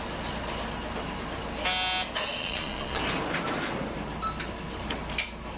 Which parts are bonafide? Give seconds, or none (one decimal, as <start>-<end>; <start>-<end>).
0.0-2.4; 3.0-5.6

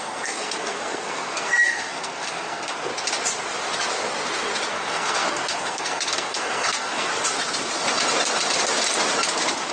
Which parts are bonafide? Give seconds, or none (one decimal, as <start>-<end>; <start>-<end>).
2.9-4.7; 7.1-9.7